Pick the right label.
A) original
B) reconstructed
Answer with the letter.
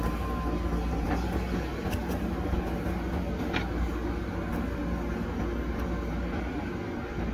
A